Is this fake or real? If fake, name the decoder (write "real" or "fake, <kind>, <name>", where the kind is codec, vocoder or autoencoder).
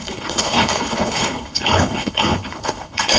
fake, codec, HILCodec